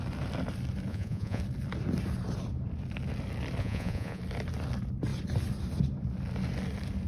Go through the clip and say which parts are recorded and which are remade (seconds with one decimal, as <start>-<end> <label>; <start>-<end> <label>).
0.0-0.9 recorded; 0.9-1.4 remade; 1.4-3.6 recorded; 3.6-4.2 remade; 4.2-7.1 recorded